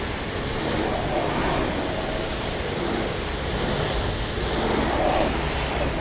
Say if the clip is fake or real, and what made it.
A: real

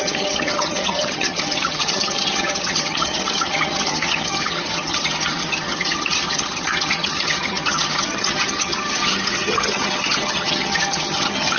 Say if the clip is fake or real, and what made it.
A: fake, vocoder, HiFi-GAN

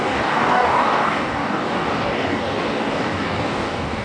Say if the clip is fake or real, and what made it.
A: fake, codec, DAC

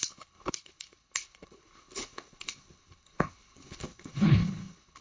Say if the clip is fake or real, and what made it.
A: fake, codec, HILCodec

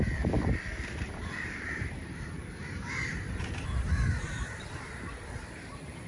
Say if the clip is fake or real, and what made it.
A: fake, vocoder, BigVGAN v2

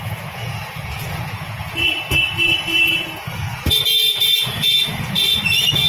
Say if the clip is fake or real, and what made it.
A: fake, vocoder, Vocos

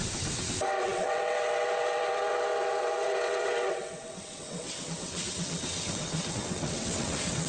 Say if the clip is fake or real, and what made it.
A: fake, vocoder, WaveNeXt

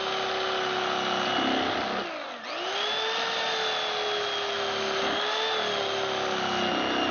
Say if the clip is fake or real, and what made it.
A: real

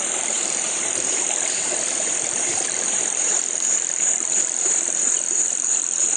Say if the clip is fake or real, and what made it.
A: fake, vocoder, BigVGAN v2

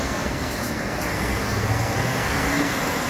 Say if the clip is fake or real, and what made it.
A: fake, codec, SNAC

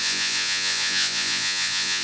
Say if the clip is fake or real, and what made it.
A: fake, vocoder, Vocos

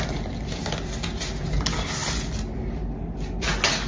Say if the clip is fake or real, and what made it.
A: real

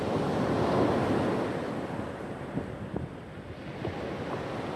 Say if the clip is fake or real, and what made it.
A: real